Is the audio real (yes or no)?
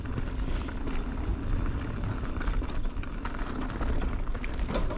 yes